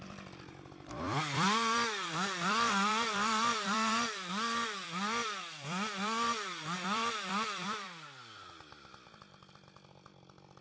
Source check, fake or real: fake